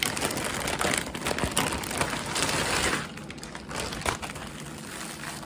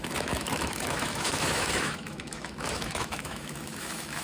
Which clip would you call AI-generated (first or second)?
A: second